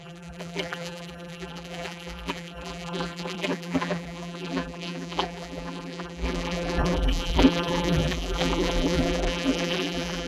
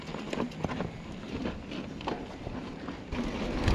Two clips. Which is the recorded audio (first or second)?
second